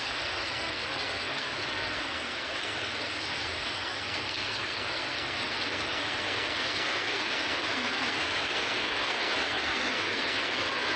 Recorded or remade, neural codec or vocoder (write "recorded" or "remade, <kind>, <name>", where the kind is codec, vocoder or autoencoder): remade, codec, SNAC